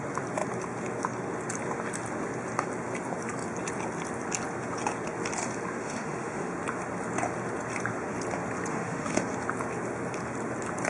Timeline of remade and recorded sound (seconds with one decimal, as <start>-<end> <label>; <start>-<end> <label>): 0.0-5.8 recorded; 5.8-6.5 remade; 6.5-8.7 recorded; 8.7-9.2 remade; 9.2-10.9 recorded